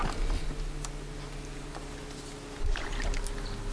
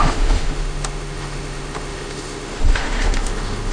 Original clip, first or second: first